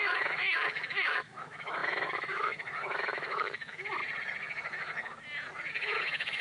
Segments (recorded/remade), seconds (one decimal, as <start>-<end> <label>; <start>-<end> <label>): 0.0-4.0 remade; 4.0-5.7 recorded; 5.7-6.4 remade